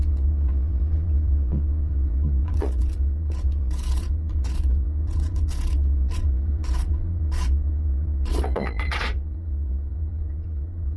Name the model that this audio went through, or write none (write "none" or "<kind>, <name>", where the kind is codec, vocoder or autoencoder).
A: vocoder, Vocos